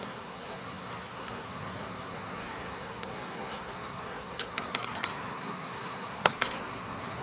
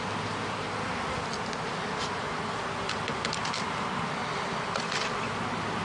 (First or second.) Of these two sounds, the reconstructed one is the first